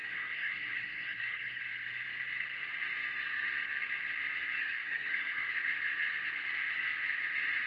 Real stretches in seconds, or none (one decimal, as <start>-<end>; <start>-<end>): 1.6-4.6; 5.5-7.7